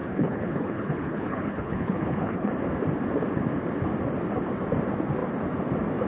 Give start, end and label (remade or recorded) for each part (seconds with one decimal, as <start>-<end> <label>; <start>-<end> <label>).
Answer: 0.0-2.5 remade; 2.5-6.1 recorded